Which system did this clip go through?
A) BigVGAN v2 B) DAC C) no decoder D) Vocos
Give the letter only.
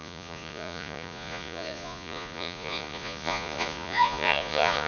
D